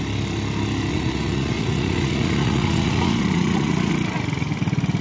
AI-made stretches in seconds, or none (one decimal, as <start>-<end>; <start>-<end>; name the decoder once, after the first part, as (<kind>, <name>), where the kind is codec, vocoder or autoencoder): 0.9-3.9 (vocoder, Vocos)